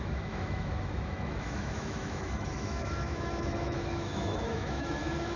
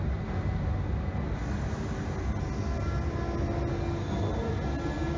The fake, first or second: first